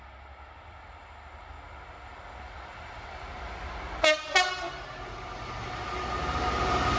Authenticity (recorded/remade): recorded